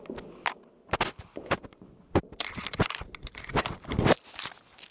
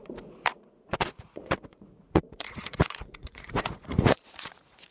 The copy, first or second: second